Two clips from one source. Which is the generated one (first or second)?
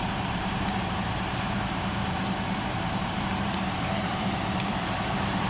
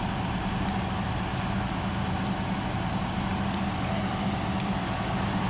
first